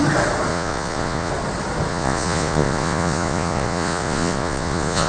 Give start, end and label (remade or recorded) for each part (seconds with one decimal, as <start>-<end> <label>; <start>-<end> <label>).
0.0-0.5 recorded; 0.5-1.3 remade; 1.3-1.9 recorded; 1.9-5.1 remade